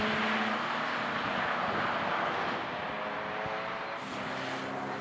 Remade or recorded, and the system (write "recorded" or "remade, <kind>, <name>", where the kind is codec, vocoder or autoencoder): recorded